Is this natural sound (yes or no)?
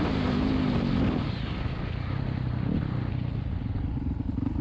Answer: yes